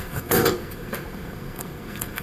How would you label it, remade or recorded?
remade